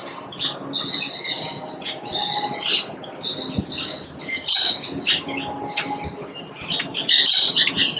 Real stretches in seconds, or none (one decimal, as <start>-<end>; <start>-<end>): 0.0-8.0